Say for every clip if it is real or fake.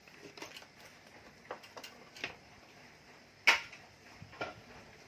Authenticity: real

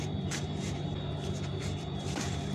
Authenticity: fake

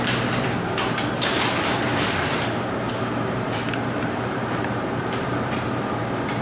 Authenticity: fake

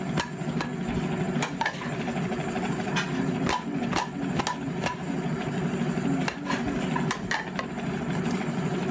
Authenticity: real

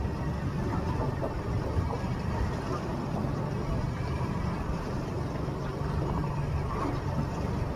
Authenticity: fake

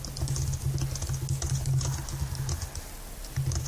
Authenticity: real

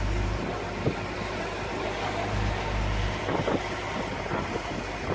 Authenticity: real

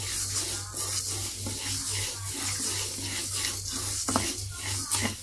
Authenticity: real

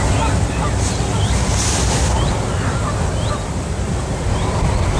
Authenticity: fake